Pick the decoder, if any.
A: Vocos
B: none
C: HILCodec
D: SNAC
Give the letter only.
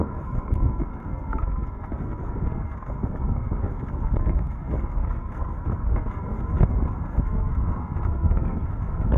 D